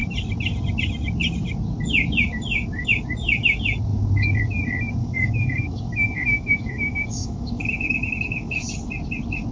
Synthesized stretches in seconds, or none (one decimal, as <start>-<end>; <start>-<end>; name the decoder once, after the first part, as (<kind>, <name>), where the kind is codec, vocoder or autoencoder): 5.0-8.7 (autoencoder, DAC-VAE)